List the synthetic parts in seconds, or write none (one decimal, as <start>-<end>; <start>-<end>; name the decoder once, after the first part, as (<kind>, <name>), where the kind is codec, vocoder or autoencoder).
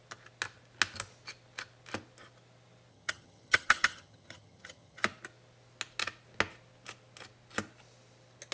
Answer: 2.9-5.0 (vocoder, HiFi-GAN)